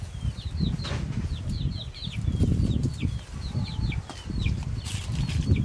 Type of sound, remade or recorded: recorded